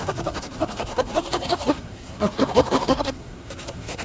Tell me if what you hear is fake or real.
fake